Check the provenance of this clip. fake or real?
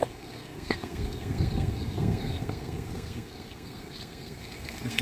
fake